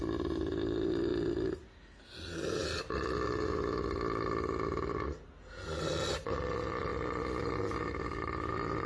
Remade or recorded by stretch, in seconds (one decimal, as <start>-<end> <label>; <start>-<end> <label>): 0.0-1.1 remade; 1.1-5.8 recorded; 5.8-6.9 remade; 6.9-8.5 recorded; 8.5-8.9 remade